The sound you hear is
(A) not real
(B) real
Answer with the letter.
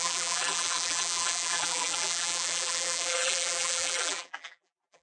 A